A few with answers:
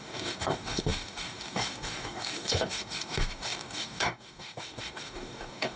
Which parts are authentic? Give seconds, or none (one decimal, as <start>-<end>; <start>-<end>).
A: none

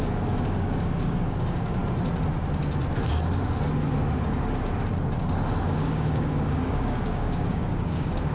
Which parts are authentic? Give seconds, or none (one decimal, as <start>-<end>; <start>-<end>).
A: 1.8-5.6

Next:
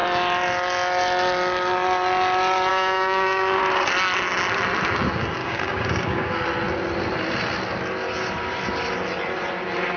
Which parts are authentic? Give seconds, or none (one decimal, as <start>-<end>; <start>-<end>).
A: 0.0-2.7; 3.6-5.4; 6.3-10.0

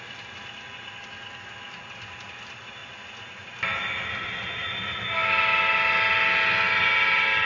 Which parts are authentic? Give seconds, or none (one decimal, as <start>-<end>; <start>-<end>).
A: 0.0-7.4

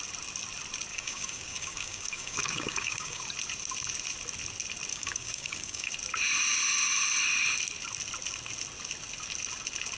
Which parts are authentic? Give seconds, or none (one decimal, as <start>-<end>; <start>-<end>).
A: 0.0-0.9; 3.2-4.9; 5.9-10.0